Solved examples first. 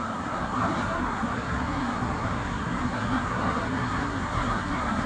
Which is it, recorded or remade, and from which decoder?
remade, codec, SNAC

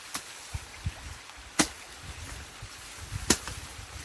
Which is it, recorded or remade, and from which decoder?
recorded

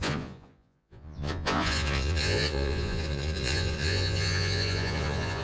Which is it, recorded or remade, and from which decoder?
remade, vocoder, Vocos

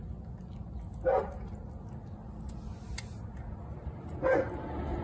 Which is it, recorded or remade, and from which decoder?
recorded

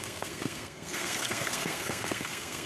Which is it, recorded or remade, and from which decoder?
remade, codec, SNAC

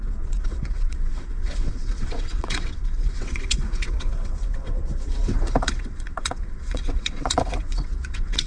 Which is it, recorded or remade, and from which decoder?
remade, vocoder, WaveNeXt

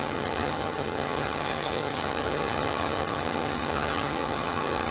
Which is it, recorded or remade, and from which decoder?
remade, vocoder, HiFi-GAN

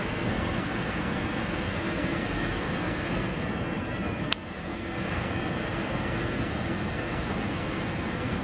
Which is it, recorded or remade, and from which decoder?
remade, codec, SNAC